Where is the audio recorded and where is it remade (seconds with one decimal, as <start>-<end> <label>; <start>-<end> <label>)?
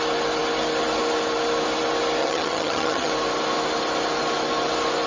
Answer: 0.0-2.2 recorded; 2.2-3.1 remade; 3.1-5.1 recorded